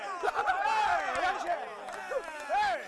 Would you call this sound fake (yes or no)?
no